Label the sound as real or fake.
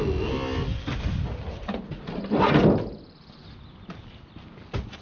real